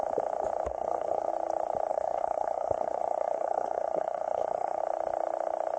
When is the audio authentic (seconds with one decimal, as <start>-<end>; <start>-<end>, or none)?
0.0-0.7; 1.3-1.9; 4.8-5.8